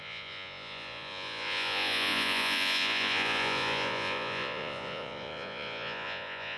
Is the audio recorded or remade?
remade